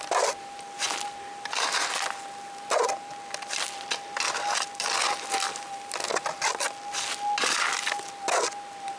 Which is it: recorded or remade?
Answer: recorded